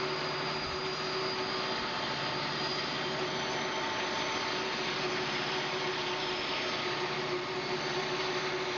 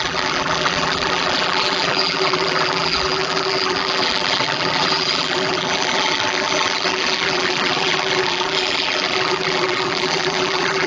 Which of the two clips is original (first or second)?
first